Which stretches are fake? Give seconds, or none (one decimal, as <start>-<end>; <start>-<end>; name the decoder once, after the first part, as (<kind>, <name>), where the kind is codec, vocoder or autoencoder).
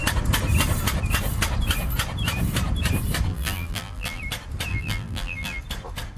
3.3-4.2 (vocoder, BigVGAN v2); 4.7-5.6